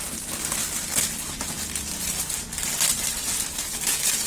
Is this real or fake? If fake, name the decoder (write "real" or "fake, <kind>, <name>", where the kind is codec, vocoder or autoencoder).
real